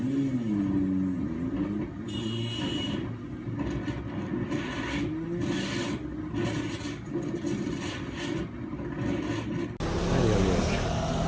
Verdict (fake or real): real